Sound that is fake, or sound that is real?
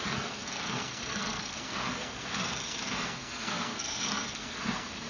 fake